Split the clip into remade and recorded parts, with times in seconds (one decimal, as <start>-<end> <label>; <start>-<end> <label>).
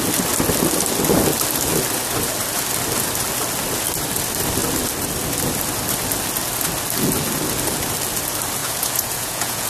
0.0-8.6 recorded; 8.6-9.7 remade